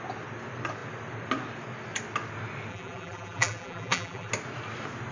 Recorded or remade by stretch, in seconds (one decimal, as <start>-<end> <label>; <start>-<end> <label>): 0.0-2.7 recorded; 2.7-4.3 remade; 4.3-5.1 recorded